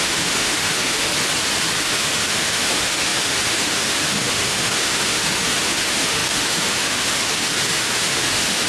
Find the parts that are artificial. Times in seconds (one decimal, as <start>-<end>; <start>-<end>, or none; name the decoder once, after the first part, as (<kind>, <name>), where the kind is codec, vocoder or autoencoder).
0.0-1.1 (autoencoder, DAC-VAE); 1.8-8.7